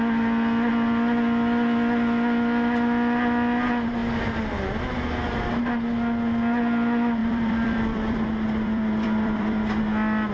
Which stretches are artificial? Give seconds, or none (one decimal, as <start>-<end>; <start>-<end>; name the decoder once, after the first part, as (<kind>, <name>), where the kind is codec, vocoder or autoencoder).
7.2-9.8 (vocoder, BigVGAN v2)